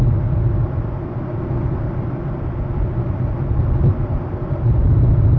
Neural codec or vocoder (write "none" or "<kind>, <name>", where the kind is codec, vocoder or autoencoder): none